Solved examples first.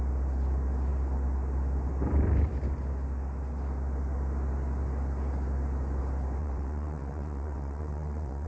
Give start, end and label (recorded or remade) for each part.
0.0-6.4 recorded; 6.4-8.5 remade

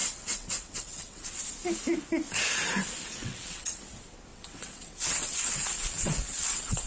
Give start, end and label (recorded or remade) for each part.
0.0-1.4 remade; 1.4-3.2 recorded; 3.2-3.8 remade; 3.8-4.3 recorded; 4.3-6.9 remade